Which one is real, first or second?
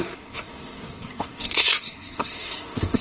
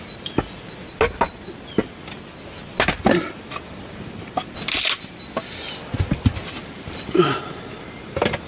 second